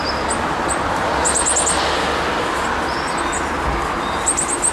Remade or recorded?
recorded